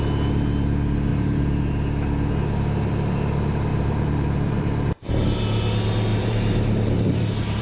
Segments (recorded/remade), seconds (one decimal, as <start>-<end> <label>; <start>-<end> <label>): 0.0-3.7 recorded; 3.7-5.1 remade; 5.1-6.1 recorded; 6.1-7.6 remade